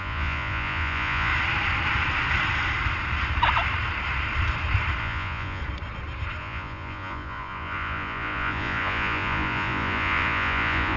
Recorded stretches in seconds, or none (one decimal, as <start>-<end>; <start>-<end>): 1.3-5.0; 5.6-6.4